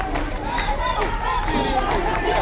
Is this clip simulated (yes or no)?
no